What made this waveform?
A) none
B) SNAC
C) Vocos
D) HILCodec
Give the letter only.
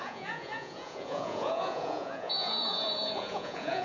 C